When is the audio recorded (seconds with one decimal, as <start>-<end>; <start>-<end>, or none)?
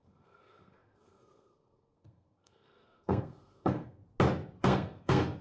4.0-4.6